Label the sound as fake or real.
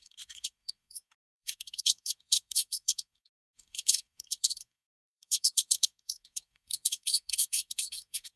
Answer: fake